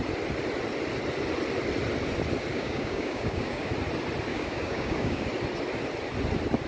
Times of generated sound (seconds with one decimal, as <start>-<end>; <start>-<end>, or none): 2.5-3.7; 4.3-5.2